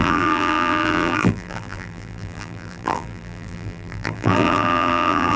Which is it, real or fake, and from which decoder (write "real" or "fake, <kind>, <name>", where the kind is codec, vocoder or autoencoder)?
fake, vocoder, BigVGAN v2